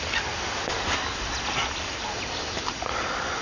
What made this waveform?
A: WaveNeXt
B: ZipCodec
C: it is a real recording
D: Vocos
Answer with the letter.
C